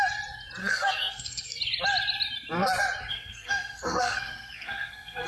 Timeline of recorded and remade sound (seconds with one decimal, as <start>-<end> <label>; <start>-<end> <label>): 0.0-0.6 recorded; 0.6-1.6 remade; 1.6-3.1 recorded; 3.1-5.3 remade

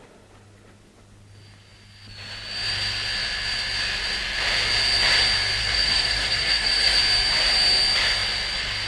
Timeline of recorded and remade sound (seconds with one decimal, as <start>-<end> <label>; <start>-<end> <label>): 0.0-5.6 recorded; 5.6-7.0 remade; 7.0-8.9 recorded